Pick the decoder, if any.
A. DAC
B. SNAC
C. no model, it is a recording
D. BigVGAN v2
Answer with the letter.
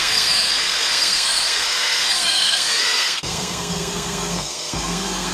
B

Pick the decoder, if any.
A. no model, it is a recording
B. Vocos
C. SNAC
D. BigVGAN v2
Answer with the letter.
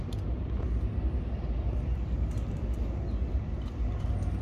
A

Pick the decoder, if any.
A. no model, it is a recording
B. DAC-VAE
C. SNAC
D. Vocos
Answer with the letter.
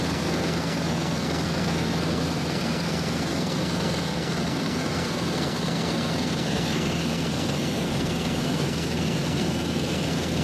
C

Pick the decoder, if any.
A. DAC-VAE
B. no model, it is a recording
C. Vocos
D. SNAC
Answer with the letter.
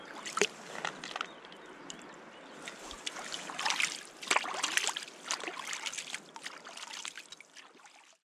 B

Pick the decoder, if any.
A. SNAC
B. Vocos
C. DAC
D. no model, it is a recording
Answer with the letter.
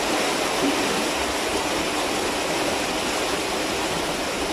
D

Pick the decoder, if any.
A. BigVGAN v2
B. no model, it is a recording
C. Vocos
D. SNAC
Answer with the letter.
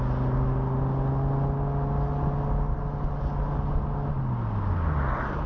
B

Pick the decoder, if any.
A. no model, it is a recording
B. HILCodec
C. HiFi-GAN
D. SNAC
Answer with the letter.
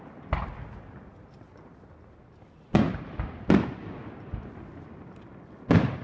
A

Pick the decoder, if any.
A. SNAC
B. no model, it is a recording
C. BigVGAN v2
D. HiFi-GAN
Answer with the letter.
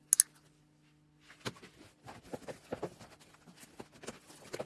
B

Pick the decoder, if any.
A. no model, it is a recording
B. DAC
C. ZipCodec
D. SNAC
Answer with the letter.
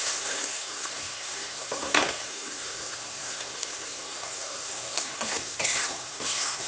D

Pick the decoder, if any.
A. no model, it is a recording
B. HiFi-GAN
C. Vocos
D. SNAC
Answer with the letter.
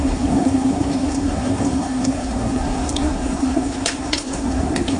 D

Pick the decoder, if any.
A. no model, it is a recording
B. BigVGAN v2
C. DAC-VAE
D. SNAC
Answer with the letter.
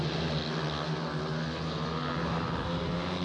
A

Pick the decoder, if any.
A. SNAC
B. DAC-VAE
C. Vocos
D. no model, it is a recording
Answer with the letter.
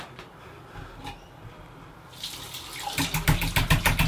D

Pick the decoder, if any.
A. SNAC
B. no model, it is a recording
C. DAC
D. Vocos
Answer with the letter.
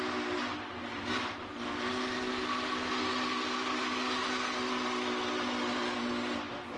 B